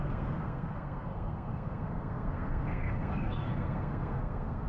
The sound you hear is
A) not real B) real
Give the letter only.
A